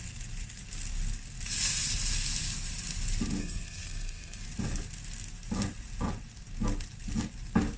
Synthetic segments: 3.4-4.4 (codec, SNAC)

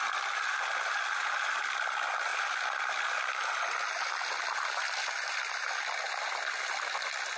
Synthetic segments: none

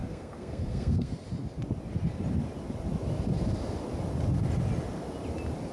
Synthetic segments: 0.0-1.1 (codec, SNAC)

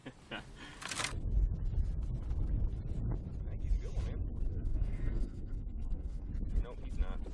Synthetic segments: 4.5-6.3 (codec, SNAC)

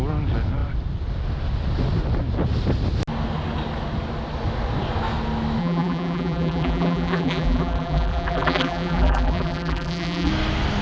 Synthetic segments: 5.6-10.3 (vocoder, BigVGAN v2)

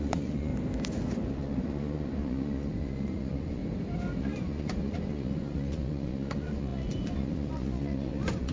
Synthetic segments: 0.0-0.5 (vocoder, Vocos); 1.3-3.6; 4.2-8.5

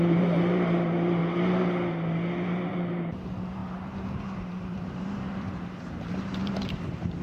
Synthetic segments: 0.0-1.2 (vocoder, BigVGAN v2); 2.7-7.2

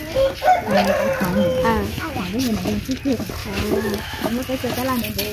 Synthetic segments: 1.6-2.1 (autoencoder, DAC-VAE); 3.4-4.3